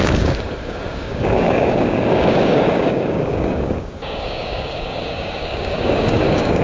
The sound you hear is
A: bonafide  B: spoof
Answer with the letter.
B